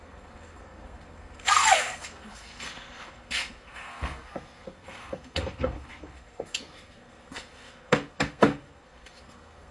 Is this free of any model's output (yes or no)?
no